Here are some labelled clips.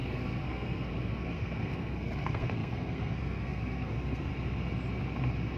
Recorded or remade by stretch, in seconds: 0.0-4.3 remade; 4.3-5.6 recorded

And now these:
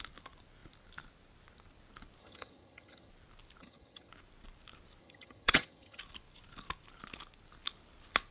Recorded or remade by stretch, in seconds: 0.0-2.2 recorded; 2.2-3.1 remade; 3.1-3.6 recorded; 3.6-4.1 remade; 4.1-5.0 recorded; 5.0-6.0 remade; 6.0-8.3 recorded